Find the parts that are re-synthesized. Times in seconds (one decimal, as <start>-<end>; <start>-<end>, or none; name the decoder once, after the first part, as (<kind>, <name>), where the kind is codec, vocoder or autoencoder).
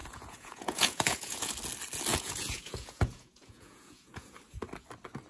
0.0-1.5 (vocoder, Vocos); 2.1-4.4